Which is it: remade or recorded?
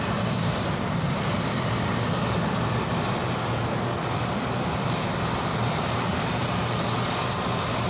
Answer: remade